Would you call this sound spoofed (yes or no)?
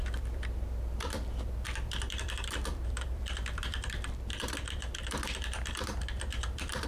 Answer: yes